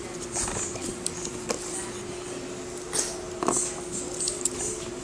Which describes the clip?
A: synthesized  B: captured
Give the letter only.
B